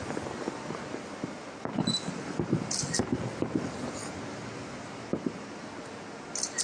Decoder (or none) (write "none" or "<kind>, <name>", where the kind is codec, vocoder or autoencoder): none